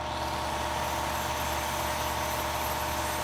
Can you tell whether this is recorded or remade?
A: recorded